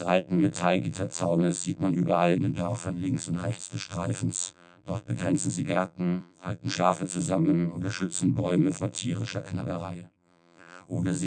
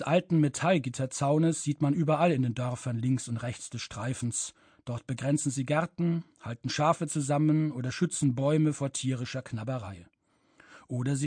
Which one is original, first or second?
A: second